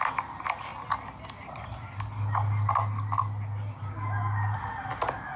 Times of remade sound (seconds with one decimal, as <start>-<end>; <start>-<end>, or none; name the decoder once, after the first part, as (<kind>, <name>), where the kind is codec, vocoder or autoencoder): none